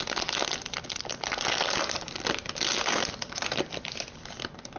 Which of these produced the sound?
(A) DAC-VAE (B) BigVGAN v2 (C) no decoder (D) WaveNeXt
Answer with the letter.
C